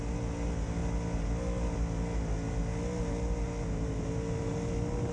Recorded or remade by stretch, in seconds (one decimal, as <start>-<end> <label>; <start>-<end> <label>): 0.0-5.1 recorded